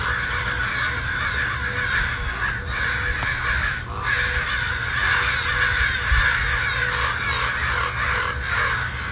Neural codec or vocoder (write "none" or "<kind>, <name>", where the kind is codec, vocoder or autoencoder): none